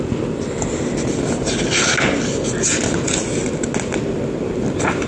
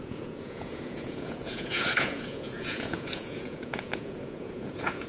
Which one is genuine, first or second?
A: first